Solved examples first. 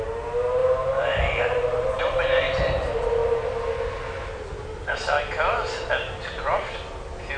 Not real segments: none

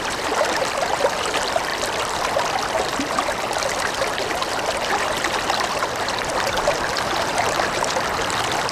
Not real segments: 0.0-8.7 (vocoder, BigVGAN v2)

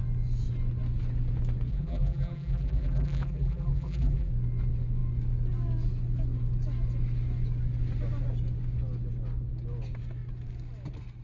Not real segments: 1.7-4.3 (vocoder, BigVGAN v2)